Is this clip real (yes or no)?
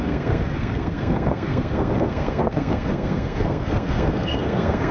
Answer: no